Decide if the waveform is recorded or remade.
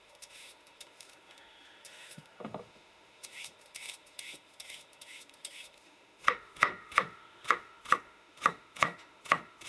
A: remade